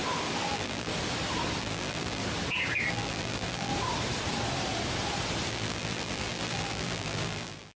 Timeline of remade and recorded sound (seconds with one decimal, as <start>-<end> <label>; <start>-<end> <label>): 0.0-0.5 recorded; 0.5-0.9 remade; 0.9-1.6 recorded; 1.6-2.2 remade; 2.2-2.9 recorded; 2.9-3.7 remade; 3.7-5.5 recorded; 5.5-7.8 remade